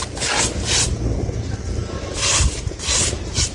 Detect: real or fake real